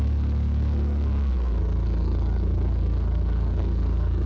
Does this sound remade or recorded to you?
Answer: remade